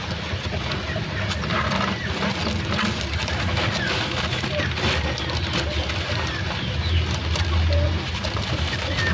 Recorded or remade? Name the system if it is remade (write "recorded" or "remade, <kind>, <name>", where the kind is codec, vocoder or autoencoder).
recorded